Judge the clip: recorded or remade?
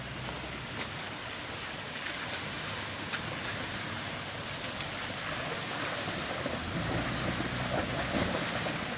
recorded